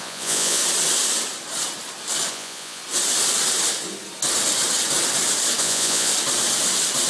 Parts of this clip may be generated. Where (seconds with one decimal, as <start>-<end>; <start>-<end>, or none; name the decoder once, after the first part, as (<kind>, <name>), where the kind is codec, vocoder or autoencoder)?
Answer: 0.0-0.6 (vocoder, Vocos); 2.3-2.8; 5.6-6.1